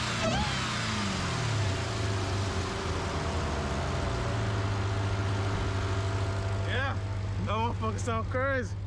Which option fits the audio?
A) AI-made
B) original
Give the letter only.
B